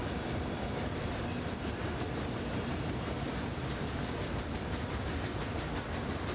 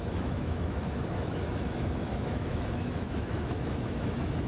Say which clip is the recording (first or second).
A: first